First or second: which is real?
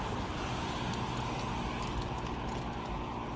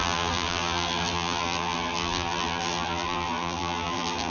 first